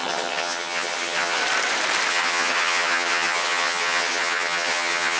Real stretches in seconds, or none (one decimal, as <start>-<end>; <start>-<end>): 1.4-2.1